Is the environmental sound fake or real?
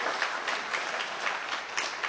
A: fake